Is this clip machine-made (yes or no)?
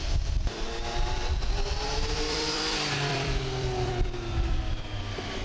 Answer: yes